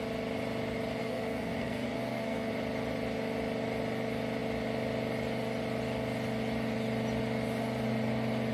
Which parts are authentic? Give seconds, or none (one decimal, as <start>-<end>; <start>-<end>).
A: 0.0-1.0; 2.5-8.5